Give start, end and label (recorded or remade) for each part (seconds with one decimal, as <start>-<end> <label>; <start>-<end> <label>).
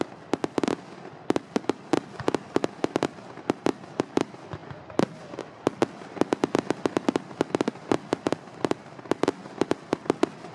0.0-10.5 recorded